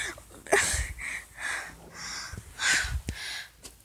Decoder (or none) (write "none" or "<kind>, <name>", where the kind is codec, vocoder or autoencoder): none